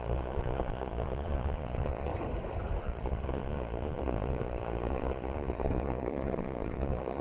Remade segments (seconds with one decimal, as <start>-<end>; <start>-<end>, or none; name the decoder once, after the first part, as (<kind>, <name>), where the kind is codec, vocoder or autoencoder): 0.0-2.1 (vocoder, Vocos); 2.8-7.2